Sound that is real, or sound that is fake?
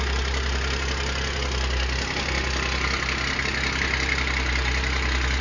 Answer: real